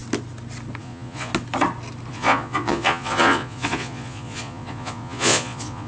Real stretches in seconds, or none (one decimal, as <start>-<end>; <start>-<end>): 0.0-0.8; 1.3-2.1

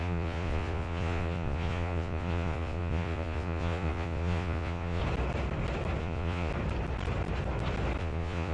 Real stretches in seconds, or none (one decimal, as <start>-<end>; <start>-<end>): 5.0-6.0; 6.5-8.0

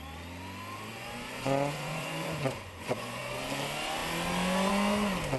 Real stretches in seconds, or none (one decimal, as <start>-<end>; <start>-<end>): 0.0-0.9; 3.2-5.4

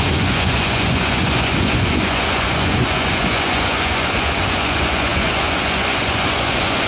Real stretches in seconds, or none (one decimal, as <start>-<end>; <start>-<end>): none

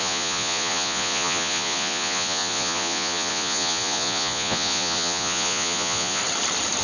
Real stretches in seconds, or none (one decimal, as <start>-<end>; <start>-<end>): 6.2-6.8

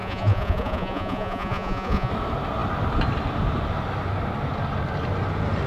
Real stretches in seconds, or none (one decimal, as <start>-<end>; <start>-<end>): 2.1-5.7

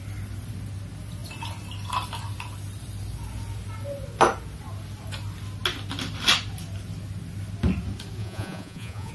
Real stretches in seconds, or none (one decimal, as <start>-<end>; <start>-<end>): 0.0-8.2